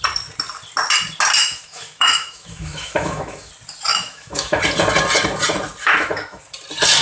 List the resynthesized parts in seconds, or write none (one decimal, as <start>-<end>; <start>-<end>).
1.4-3.5; 3.9-4.6; 5.8-6.4